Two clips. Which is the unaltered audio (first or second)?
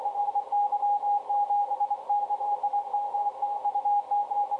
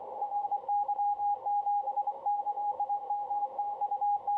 first